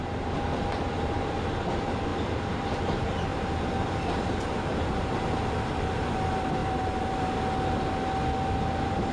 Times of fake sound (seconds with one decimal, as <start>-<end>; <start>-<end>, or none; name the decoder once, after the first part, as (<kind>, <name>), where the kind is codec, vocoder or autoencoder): 2.1-2.8 (vocoder, BigVGAN v2); 3.3-5.4; 6.6-7.4